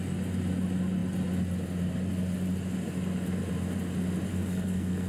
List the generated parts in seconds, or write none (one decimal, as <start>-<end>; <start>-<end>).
4.3-5.1